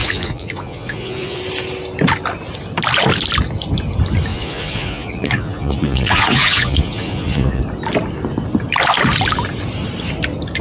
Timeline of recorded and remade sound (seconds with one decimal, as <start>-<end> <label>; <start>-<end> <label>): 0.0-1.4 remade; 1.4-4.3 recorded; 4.3-7.6 remade; 7.6-10.6 recorded

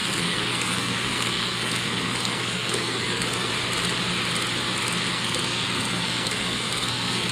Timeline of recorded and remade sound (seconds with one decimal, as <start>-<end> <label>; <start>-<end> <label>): 0.0-3.5 remade; 3.5-5.1 recorded; 5.1-7.3 remade

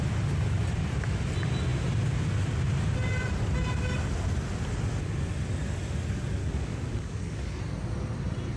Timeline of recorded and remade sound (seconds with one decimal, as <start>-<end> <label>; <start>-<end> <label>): 0.0-6.4 recorded; 6.4-7.6 remade; 7.6-8.6 recorded

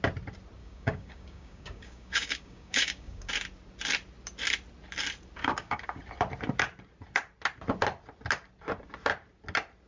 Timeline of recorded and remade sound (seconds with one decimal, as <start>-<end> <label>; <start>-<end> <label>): 0.0-0.6 recorded; 0.6-3.3 remade; 3.3-5.4 recorded; 5.4-6.0 remade; 6.0-9.9 recorded

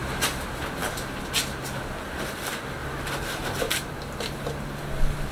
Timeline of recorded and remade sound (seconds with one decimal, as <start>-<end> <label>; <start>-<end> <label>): 0.0-2.0 recorded; 2.0-2.8 remade; 2.8-5.3 recorded

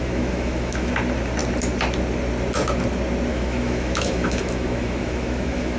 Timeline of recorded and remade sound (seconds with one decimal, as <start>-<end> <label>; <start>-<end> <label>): 0.0-0.9 remade; 0.9-3.3 recorded; 3.3-5.8 remade